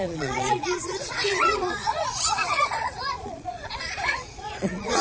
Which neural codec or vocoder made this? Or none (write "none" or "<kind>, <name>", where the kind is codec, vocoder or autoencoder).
vocoder, Vocos